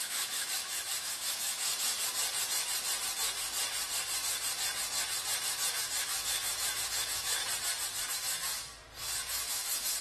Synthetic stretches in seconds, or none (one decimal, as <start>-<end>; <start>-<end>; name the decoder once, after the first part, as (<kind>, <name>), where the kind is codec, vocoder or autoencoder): 0.0-1.7 (autoencoder, DAC-VAE); 5.7-7.4; 8.1-8.7; 9.3-10.0

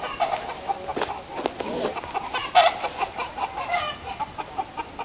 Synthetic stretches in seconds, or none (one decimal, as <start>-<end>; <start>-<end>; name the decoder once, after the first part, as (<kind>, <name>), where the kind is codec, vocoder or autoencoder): none

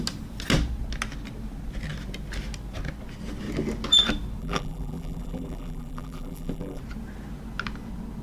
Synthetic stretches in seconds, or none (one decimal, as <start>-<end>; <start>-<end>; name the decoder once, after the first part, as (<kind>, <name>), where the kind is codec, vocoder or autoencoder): 4.4-6.8 (vocoder, BigVGAN v2)